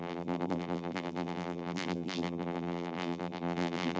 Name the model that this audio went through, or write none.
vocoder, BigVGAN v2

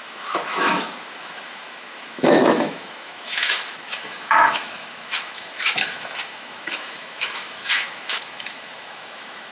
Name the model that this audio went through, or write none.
autoencoder, DAC-VAE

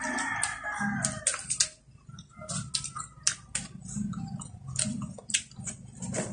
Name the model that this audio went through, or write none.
none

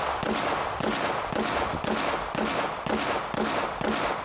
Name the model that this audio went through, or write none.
none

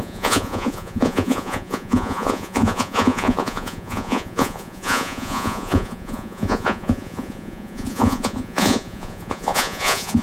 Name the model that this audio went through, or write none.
vocoder, Vocos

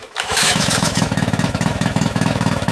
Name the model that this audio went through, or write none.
autoencoder, DAC-VAE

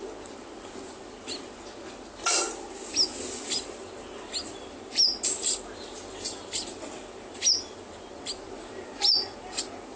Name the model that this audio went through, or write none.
none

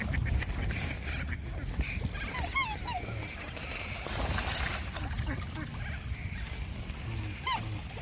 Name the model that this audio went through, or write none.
none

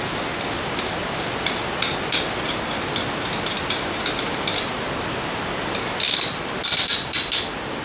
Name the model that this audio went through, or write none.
none